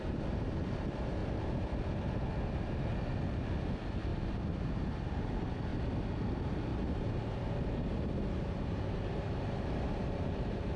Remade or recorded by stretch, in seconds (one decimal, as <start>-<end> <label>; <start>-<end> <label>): 0.0-1.2 remade; 1.2-2.6 recorded; 2.6-5.7 remade; 5.7-6.3 recorded; 6.3-10.8 remade